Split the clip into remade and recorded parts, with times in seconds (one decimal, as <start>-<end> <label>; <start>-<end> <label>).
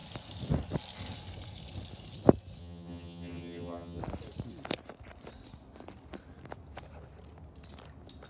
0.0-2.6 recorded; 2.6-4.0 remade; 4.0-8.3 recorded